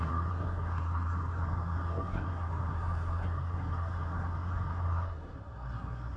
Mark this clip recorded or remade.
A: remade